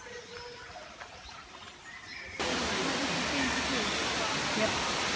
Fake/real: real